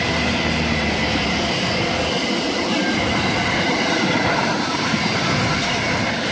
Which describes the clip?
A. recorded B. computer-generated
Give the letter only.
A